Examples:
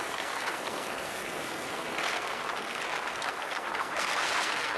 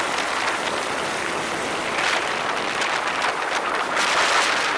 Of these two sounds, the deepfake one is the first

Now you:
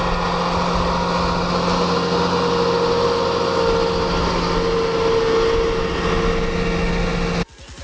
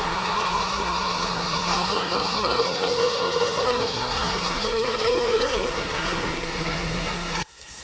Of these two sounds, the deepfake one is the second